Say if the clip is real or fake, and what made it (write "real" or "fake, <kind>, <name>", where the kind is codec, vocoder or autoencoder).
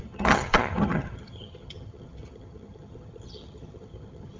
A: fake, vocoder, HiFi-GAN